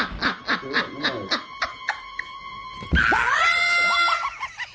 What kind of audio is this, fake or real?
real